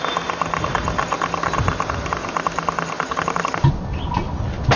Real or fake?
real